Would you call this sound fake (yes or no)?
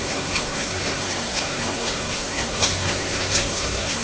yes